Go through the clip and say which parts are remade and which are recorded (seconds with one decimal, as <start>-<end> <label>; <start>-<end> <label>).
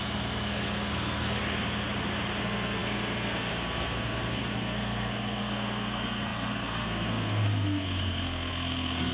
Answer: 0.0-1.4 remade; 1.4-2.4 recorded; 2.4-9.1 remade